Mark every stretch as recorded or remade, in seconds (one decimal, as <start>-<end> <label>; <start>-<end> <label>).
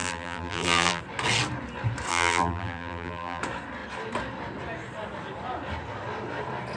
0.0-1.0 remade; 1.0-2.1 recorded; 2.1-3.4 remade; 3.4-6.8 recorded